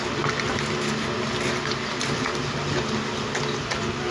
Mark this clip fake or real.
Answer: real